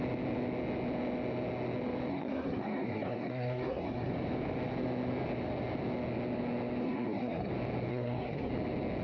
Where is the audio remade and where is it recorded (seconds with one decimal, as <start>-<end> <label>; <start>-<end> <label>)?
0.0-2.1 recorded; 2.1-4.1 remade; 4.1-6.8 recorded; 6.8-7.5 remade; 7.5-7.9 recorded; 7.9-8.5 remade; 8.5-9.0 recorded

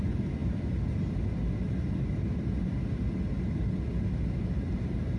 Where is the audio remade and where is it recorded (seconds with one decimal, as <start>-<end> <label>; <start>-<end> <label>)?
0.0-5.2 recorded

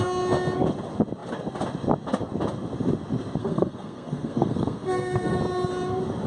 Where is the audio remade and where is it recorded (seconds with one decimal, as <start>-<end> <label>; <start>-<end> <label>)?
0.0-3.4 recorded; 3.4-5.4 remade; 5.4-6.3 recorded

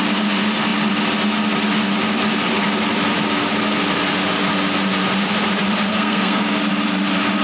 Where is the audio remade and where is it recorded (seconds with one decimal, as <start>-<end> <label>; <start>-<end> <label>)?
0.0-5.9 recorded; 5.9-6.6 remade; 6.6-7.4 recorded

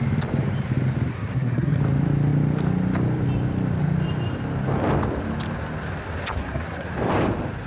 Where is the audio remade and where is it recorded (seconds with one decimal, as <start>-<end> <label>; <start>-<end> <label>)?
0.0-1.1 recorded; 1.1-1.8 remade; 1.8-6.4 recorded; 6.4-6.9 remade; 6.9-7.7 recorded

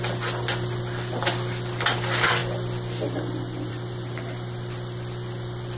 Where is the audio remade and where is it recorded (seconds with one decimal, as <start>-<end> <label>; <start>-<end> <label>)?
0.0-5.8 recorded

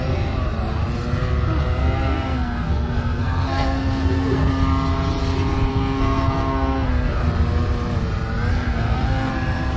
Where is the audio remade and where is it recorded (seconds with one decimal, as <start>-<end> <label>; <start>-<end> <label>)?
0.0-1.8 recorded; 1.8-4.5 remade; 4.5-5.7 recorded; 5.7-7.2 remade; 7.2-8.5 recorded; 8.5-9.3 remade; 9.3-9.8 recorded

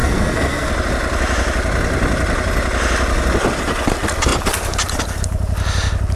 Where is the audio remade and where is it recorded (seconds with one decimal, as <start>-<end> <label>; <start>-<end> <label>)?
0.0-0.7 remade; 0.7-6.2 recorded